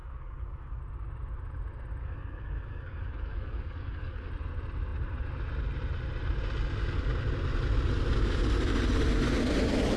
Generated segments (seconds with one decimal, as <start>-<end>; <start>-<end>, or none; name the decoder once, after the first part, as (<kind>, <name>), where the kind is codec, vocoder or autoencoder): 0.0-0.8 (codec, DAC); 2.0-4.3